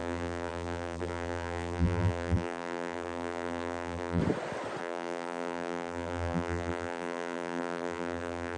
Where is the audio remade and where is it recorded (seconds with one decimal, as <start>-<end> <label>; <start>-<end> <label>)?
0.0-4.2 remade; 4.2-4.8 recorded; 4.8-8.6 remade